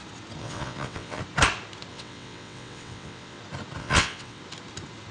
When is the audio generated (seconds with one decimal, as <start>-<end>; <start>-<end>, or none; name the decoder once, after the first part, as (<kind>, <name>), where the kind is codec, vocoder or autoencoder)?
0.4-1.2 (vocoder, WaveNeXt); 1.9-3.4; 3.8-4.4